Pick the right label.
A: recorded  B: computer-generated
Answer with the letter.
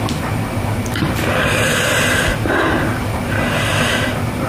B